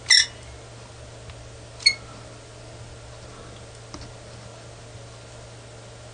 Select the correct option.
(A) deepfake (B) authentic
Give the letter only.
B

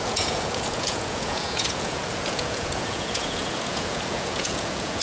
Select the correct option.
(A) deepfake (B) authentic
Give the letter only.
A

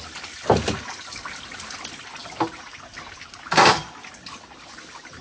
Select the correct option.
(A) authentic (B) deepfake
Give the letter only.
A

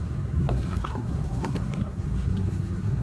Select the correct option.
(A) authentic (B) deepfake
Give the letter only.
B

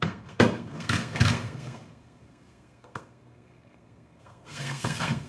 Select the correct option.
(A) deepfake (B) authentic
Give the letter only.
A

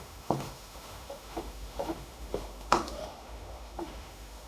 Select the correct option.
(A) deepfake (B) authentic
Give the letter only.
A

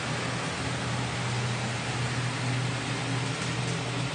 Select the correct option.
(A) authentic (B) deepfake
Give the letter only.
A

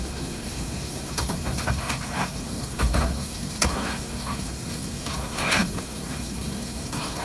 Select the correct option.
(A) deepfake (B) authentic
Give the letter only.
A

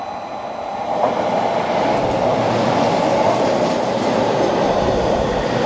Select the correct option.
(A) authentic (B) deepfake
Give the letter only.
A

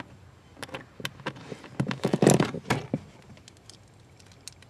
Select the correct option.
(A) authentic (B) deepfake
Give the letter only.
A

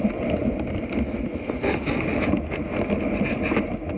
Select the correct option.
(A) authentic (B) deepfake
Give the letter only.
A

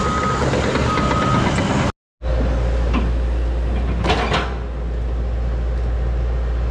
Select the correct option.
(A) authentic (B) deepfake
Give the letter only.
A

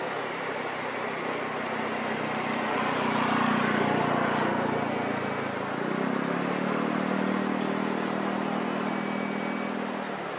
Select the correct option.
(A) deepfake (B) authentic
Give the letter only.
B